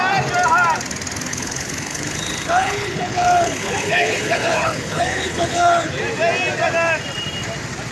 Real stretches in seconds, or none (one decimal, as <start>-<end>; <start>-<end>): 0.0-1.3; 5.9-7.9